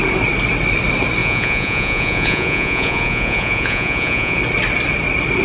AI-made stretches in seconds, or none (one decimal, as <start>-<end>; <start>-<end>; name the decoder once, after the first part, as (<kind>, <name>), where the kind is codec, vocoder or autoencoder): 1.2-4.4 (vocoder, Vocos)

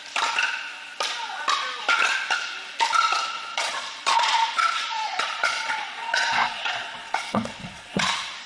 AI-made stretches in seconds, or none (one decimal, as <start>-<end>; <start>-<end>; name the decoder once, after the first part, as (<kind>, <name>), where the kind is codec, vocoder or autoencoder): 3.5-8.5 (vocoder, Vocos)